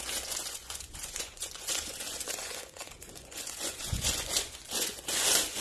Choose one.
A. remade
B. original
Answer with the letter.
A